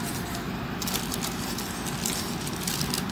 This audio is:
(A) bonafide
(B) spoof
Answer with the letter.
A